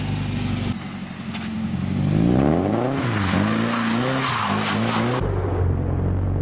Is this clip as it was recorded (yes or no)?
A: yes